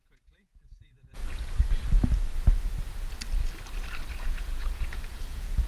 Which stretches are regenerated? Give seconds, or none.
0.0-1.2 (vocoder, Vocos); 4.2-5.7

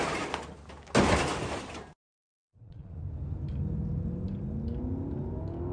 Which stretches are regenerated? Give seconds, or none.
2.1-3.0 (vocoder, Vocos)

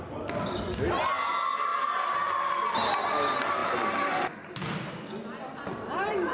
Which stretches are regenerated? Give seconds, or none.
none